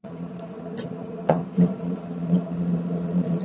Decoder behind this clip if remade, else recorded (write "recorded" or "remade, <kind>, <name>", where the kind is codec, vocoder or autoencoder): remade, vocoder, Vocos